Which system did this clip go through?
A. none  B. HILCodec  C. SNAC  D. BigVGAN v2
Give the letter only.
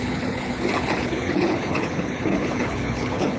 B